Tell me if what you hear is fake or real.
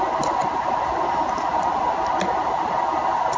real